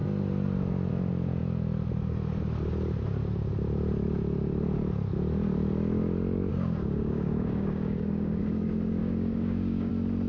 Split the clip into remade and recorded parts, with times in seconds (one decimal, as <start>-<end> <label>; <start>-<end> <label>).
0.0-6.5 recorded; 6.5-8.4 remade; 8.4-9.0 recorded; 9.0-9.9 remade; 9.9-10.3 recorded